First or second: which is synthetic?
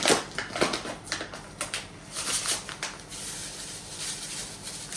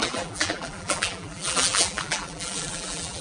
second